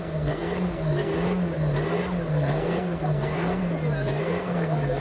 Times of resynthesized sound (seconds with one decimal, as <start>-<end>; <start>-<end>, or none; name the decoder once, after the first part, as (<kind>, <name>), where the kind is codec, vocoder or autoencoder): 0.0-1.1 (codec, SNAC); 2.3-3.6; 4.2-5.0